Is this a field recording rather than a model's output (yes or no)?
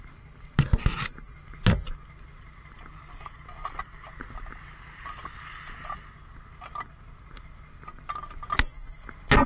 yes